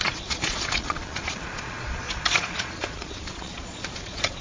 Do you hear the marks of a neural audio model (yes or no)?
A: yes